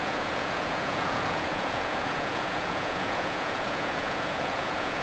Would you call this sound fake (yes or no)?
yes